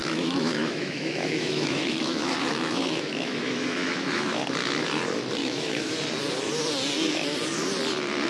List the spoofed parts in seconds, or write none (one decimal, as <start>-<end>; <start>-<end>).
0.0-4.4; 5.4-5.9